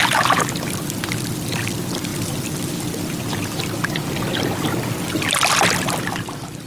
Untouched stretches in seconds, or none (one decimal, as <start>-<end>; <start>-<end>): 0.0-6.7